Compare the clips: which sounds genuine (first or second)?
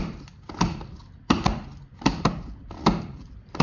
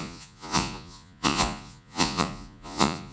first